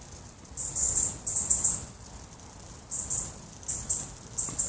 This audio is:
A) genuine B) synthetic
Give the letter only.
A